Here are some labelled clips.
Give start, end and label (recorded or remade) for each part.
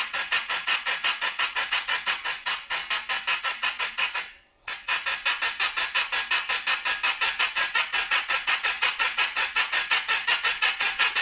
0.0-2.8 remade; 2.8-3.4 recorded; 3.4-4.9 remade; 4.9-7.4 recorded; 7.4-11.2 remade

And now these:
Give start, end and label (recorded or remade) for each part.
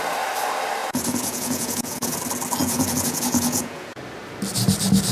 0.0-0.8 recorded; 0.8-2.2 remade; 2.2-2.6 recorded; 2.6-4.0 remade; 4.0-5.1 recorded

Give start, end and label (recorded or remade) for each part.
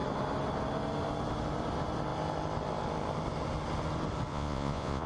0.0-4.3 recorded; 4.3-5.1 remade